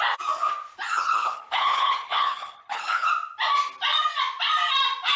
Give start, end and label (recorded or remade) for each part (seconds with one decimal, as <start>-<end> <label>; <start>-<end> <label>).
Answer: 0.0-0.9 recorded; 0.9-3.1 remade; 3.1-5.2 recorded